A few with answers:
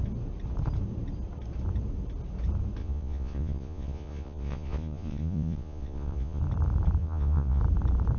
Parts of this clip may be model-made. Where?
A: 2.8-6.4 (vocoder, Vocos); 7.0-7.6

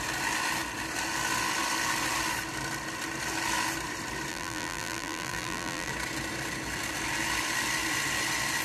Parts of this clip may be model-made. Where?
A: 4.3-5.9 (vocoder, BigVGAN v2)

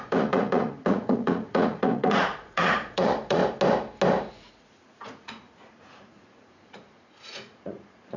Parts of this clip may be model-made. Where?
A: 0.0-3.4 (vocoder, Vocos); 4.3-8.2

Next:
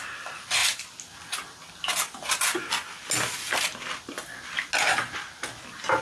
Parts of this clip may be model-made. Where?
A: none